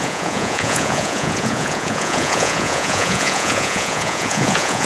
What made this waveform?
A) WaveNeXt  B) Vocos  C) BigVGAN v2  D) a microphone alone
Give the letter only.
B